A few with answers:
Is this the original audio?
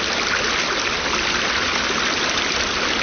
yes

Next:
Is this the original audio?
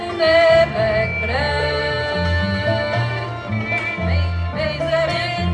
yes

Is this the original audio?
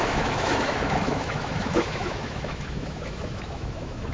no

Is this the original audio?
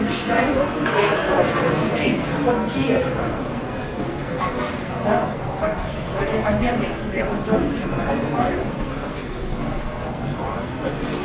no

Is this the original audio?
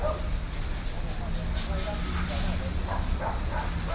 yes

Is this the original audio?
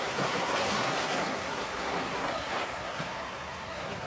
no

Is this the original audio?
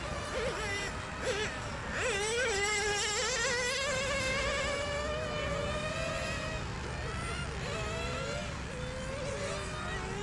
yes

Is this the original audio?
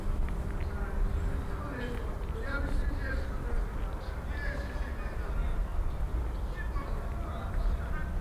yes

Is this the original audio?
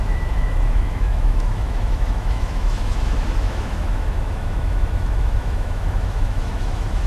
no